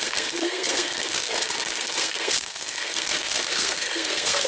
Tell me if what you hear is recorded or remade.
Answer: remade